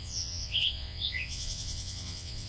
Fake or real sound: fake